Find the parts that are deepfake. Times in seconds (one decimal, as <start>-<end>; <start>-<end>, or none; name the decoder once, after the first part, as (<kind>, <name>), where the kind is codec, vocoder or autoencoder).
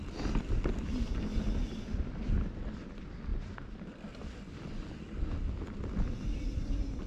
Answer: none